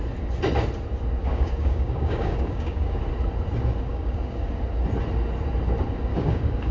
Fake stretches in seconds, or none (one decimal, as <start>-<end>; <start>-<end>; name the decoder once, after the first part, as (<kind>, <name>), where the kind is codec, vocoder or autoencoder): 1.2-3.0 (codec, DAC); 3.9-4.5; 6.1-6.7